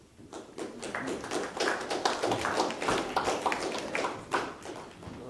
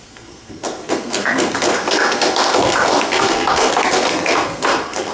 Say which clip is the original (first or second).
first